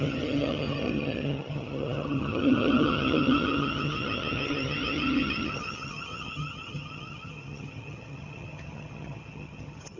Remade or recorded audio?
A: remade